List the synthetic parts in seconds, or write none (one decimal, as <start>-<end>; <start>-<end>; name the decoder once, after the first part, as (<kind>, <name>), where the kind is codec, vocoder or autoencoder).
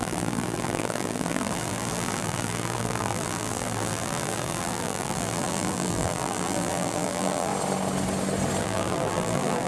0.0-7.5 (vocoder, BigVGAN v2); 8.6-9.7